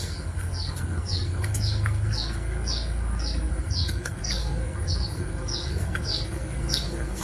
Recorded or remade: remade